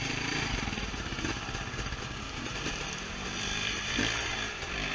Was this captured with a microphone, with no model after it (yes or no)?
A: no